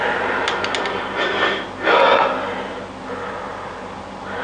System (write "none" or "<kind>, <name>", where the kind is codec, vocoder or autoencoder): none